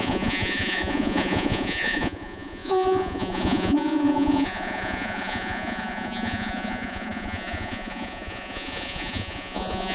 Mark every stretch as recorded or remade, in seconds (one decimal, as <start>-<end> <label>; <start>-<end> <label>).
0.0-9.9 remade